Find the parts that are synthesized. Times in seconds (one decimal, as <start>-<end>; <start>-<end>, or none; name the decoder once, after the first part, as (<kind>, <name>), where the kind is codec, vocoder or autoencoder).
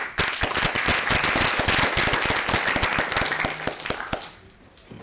none